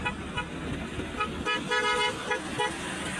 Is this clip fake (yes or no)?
no